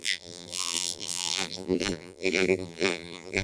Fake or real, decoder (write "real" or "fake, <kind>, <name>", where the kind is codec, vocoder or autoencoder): fake, vocoder, BigVGAN v2